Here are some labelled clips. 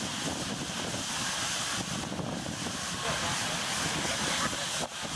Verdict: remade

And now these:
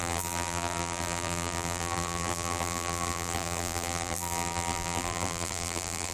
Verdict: remade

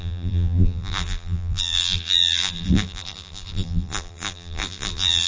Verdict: remade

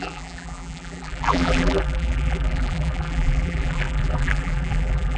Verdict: remade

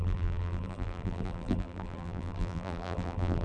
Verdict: remade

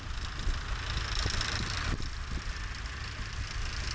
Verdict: recorded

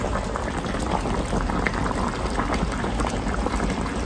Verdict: recorded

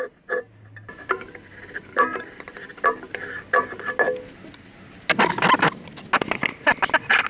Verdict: recorded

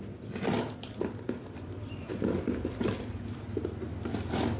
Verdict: recorded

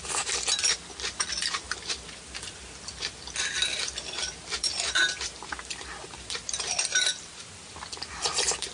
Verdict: remade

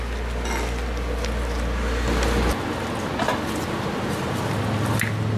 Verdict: recorded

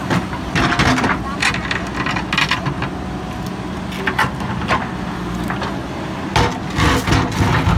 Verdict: recorded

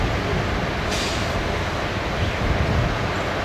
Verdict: recorded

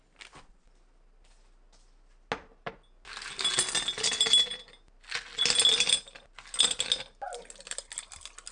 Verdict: recorded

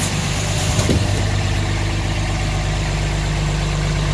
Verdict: remade